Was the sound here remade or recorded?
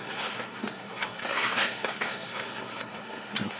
remade